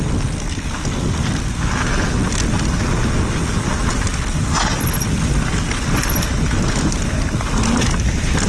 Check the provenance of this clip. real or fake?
real